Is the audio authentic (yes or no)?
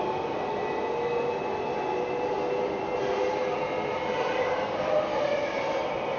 yes